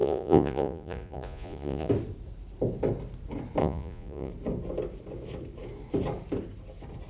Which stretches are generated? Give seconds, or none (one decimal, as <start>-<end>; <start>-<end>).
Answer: 0.0-1.9; 3.6-4.3